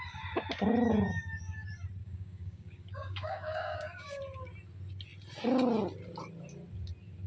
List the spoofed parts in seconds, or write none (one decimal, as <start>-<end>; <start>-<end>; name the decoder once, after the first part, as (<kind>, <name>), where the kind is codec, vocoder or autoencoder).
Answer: 2.0-4.2 (codec, DAC)